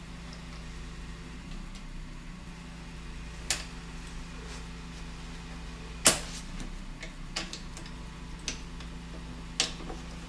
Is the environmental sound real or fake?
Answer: real